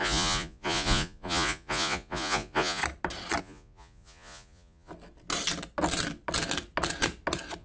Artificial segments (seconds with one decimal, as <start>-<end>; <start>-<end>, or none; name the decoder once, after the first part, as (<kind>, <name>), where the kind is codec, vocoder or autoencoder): 0.0-2.8 (vocoder, Vocos); 3.4-4.9